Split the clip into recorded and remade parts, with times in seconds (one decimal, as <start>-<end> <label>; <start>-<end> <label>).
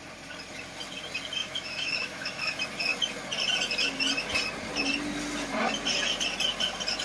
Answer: 0.0-1.4 recorded; 1.4-2.5 remade; 2.5-7.0 recorded